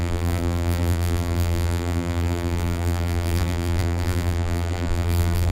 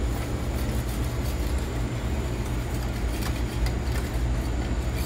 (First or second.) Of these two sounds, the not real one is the first